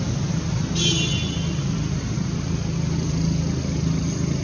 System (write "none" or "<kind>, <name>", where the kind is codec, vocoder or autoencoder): none